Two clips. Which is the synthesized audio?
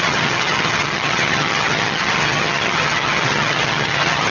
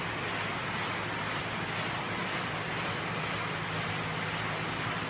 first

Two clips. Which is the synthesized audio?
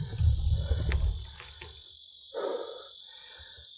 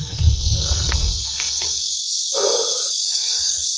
second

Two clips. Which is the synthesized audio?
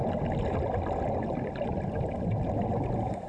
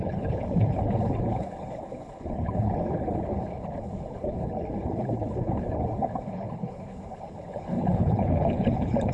second